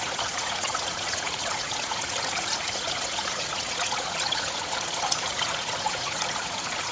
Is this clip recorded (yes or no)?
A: no